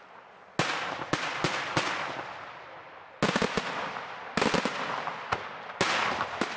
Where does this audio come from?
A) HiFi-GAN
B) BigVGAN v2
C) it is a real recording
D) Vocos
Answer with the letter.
C